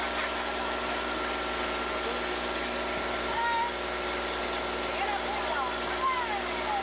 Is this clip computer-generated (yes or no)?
no